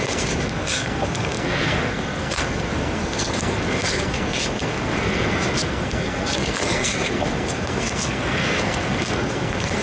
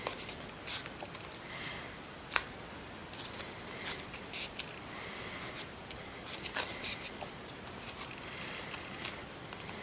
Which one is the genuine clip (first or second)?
second